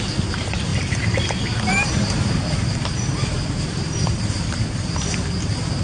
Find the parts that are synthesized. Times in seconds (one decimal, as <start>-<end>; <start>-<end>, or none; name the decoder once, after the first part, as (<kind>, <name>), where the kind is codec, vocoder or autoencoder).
0.7-4.2 (vocoder, BigVGAN v2)